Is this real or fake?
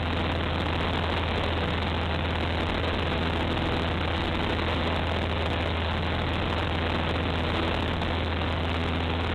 real